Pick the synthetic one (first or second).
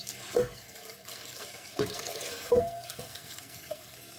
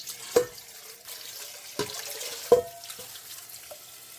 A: first